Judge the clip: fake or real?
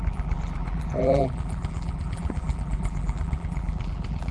fake